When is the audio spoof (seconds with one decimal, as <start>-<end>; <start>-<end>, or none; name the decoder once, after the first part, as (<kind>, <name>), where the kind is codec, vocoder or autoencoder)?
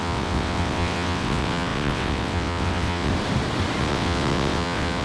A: 0.0-3.1 (vocoder, WaveNeXt); 3.8-5.0